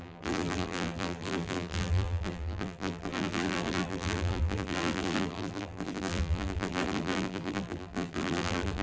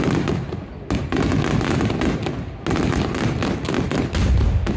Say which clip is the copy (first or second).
first